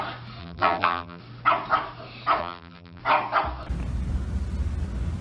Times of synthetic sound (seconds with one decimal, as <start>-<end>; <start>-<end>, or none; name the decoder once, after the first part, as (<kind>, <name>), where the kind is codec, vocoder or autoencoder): 0.4-1.2 (vocoder, BigVGAN v2); 2.4-3.0